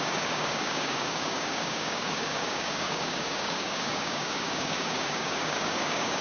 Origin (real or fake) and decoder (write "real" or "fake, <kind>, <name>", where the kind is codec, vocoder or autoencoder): fake, codec, DAC